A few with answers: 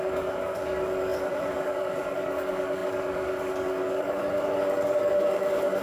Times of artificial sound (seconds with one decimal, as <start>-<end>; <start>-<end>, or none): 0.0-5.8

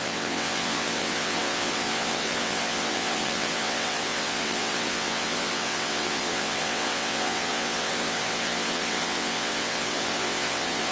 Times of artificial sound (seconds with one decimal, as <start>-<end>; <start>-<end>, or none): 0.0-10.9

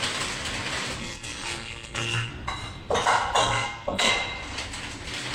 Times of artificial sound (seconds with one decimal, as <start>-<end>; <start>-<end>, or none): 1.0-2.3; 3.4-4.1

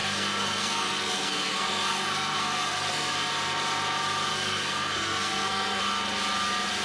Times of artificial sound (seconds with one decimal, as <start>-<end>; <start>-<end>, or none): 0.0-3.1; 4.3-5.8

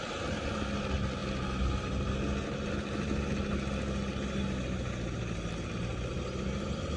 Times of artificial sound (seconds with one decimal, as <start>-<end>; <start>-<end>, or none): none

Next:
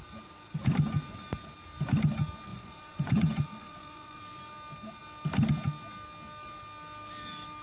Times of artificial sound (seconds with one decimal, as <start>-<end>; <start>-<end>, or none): 2.5-4.2

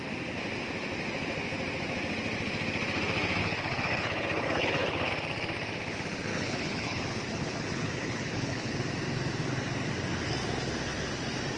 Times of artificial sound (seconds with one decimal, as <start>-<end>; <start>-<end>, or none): 3.4-5.1; 6.3-8.8